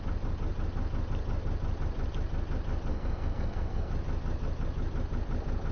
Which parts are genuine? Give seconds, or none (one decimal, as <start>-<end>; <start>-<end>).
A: 0.0-2.9; 3.9-5.7